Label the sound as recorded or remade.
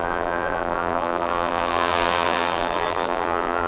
remade